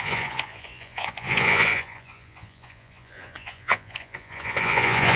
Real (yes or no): no